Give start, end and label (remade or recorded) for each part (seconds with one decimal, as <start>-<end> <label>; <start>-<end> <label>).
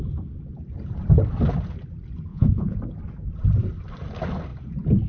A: 0.0-2.3 recorded; 2.3-2.8 remade; 2.8-5.1 recorded